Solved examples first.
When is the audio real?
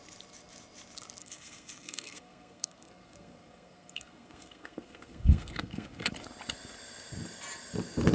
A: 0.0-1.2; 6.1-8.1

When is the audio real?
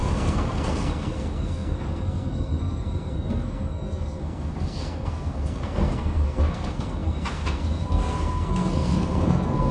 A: none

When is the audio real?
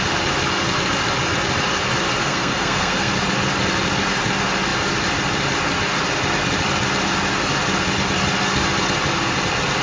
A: 0.0-2.2; 3.1-9.8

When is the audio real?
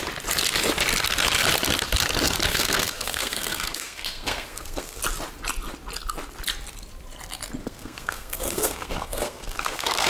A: 0.0-2.5; 5.0-7.6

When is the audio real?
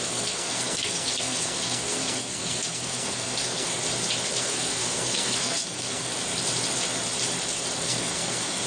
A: 3.8-4.3; 6.1-7.8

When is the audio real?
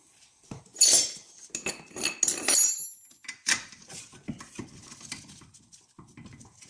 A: 0.0-6.7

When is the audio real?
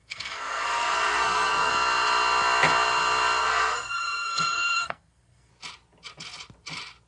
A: 1.7-3.4; 5.5-7.1